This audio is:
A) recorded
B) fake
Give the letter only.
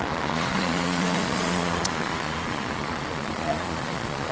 B